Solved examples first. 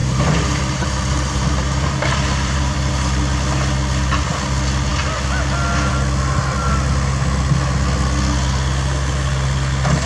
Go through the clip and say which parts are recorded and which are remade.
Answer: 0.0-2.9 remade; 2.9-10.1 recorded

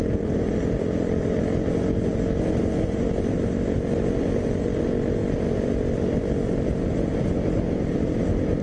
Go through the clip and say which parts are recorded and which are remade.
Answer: 0.0-8.6 recorded

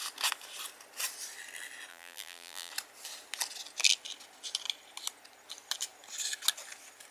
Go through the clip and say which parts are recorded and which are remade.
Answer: 0.0-1.9 recorded; 1.9-2.7 remade; 2.7-7.1 recorded